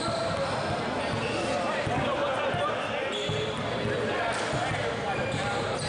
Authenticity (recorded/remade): recorded